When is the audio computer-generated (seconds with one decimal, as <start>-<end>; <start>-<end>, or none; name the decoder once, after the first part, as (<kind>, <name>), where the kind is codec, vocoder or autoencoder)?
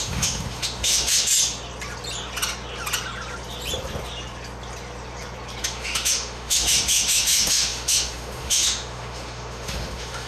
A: 0.0-1.3 (autoencoder, DAC-VAE); 5.6-10.3